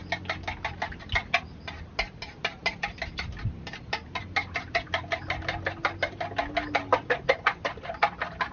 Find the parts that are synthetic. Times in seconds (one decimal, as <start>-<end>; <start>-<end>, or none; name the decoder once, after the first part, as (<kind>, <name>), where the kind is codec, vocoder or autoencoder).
none